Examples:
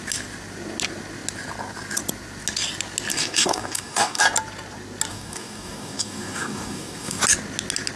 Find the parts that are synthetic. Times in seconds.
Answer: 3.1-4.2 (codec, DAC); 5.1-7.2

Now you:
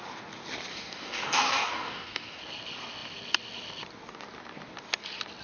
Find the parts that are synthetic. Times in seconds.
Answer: 0.7-2.4 (codec, DAC)

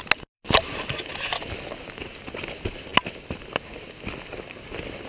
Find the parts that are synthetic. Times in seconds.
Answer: none

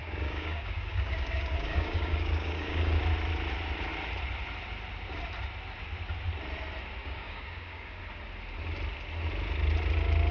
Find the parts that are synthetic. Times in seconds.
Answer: 0.0-3.0 (codec, DAC); 7.0-8.0

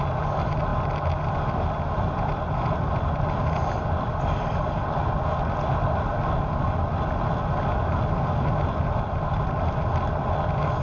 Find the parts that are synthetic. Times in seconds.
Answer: none

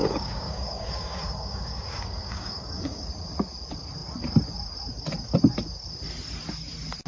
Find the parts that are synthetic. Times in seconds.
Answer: 0.0-3.0 (codec, DAC)

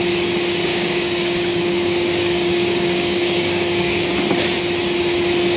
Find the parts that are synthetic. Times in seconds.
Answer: 0.7-4.1 (codec, DAC)